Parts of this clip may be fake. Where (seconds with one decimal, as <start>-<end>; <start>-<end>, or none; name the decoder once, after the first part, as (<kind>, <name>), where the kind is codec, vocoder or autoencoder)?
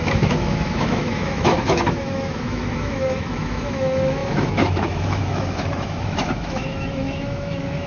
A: 0.0-7.9 (autoencoder, DAC-VAE)